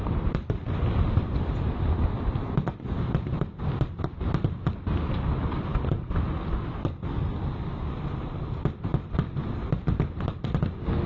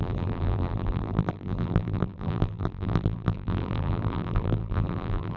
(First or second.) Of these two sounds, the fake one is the second